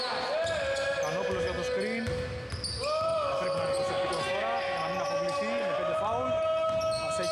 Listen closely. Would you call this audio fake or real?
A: real